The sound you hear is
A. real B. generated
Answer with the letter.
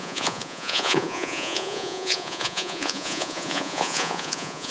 B